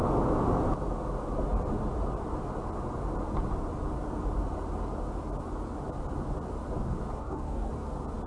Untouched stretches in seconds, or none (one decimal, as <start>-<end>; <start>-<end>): 0.0-7.2; 7.7-8.3